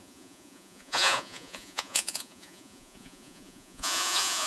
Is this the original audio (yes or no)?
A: no